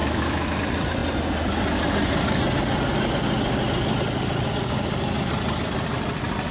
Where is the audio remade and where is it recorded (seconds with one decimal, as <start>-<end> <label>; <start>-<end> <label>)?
0.0-0.6 remade; 0.6-6.5 recorded